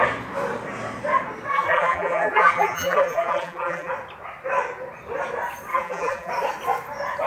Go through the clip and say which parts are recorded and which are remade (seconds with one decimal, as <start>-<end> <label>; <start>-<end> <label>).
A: 0.0-1.5 recorded; 1.5-3.9 remade; 3.9-5.7 recorded; 5.7-6.3 remade; 6.3-7.3 recorded